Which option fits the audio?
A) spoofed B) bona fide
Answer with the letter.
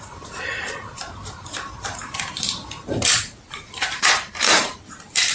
A